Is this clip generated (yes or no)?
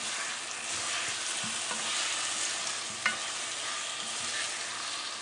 no